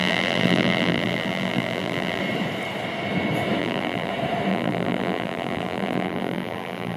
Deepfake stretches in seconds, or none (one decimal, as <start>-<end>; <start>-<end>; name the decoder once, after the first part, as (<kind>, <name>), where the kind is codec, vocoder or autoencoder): 0.0-2.2 (vocoder, BigVGAN v2); 3.6-4.1; 4.5-7.0